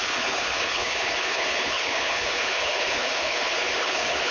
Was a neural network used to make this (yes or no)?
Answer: yes